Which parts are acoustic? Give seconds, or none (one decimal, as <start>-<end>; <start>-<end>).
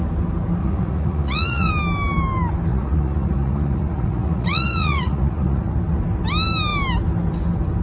0.0-0.6; 1.7-2.7; 5.7-7.8